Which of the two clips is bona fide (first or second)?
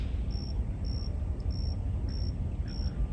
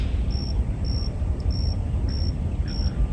first